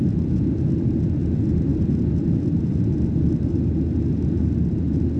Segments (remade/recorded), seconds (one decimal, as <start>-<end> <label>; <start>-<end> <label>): 0.0-5.2 recorded